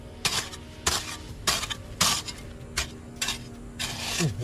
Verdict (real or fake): real